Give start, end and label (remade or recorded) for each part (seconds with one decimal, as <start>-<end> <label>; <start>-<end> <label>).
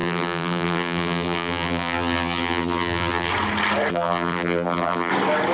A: 0.0-3.3 remade; 3.3-3.9 recorded; 3.9-5.1 remade; 5.1-5.5 recorded